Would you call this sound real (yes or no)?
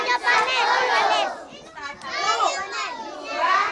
yes